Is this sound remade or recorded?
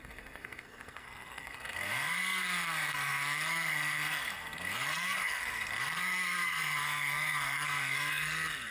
remade